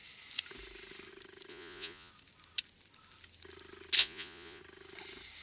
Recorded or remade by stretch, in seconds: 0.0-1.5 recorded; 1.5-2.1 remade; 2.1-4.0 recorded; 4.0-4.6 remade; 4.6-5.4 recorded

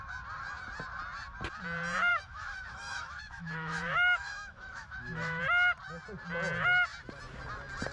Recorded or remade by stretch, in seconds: 0.0-2.1 recorded; 2.1-5.4 remade; 5.4-7.9 recorded

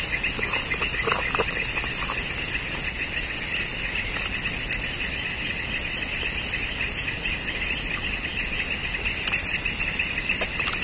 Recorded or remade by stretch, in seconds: 0.0-10.8 recorded